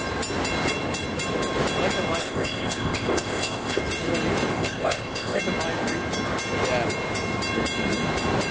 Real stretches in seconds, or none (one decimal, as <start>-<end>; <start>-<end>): 0.0-2.2; 3.8-4.5; 5.4-8.5

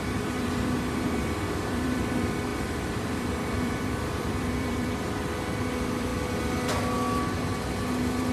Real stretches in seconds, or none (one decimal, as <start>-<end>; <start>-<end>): 6.1-7.9

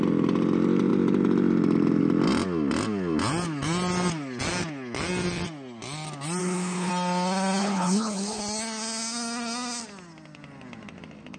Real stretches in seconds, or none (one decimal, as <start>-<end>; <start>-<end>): 0.0-6.4; 6.9-7.6; 8.4-11.4

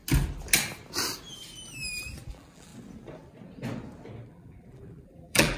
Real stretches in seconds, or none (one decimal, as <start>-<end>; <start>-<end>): 0.0-2.3; 2.7-4.3

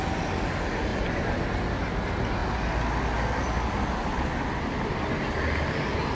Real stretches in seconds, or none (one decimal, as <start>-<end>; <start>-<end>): 0.0-0.9; 1.4-6.1

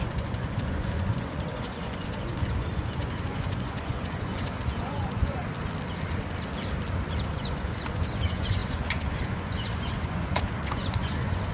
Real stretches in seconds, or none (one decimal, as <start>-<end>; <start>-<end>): 5.4-7.3